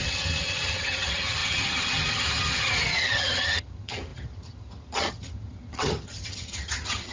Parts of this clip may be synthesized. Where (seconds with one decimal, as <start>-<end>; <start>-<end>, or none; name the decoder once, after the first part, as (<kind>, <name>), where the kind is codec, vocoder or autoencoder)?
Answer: 0.0-7.1 (vocoder, HiFi-GAN)